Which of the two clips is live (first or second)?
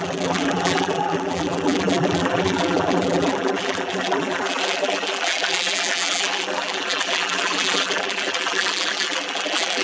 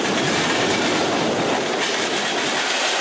second